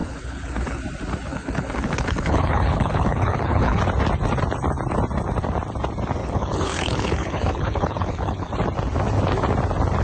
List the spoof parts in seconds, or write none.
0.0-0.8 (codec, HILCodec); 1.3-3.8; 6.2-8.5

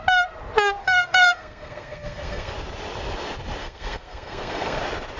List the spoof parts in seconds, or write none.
0.8-2.5 (codec, SNAC); 3.6-4.8